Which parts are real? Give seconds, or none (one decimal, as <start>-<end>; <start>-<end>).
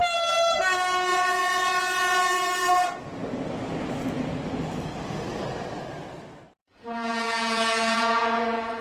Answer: 0.0-1.1; 2.7-6.6